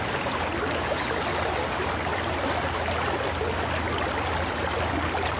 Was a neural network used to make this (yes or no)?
no